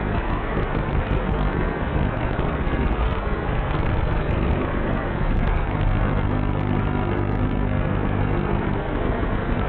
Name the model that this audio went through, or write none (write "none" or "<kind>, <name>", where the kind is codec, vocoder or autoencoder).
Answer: codec, SNAC